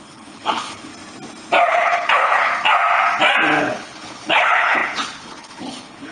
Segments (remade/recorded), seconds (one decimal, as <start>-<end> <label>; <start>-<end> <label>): 0.0-0.9 remade; 0.9-1.7 recorded; 1.7-2.5 remade; 2.5-3.6 recorded; 3.6-6.1 remade